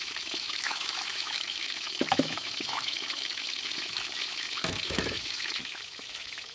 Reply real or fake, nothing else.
fake